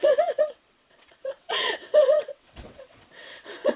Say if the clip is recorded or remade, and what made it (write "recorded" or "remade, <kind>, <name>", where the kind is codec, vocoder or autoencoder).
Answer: remade, vocoder, WaveNeXt